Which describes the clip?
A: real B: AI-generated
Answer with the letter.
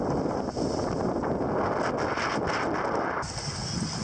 A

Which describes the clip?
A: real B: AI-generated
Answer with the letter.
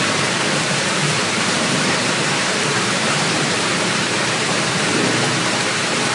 B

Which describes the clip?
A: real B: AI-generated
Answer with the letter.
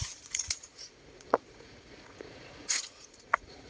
B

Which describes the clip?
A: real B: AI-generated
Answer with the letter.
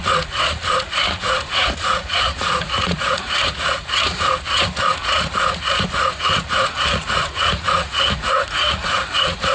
B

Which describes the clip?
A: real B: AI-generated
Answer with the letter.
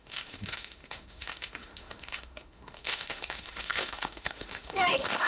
B